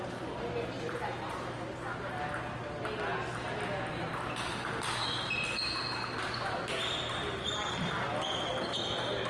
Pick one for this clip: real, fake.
real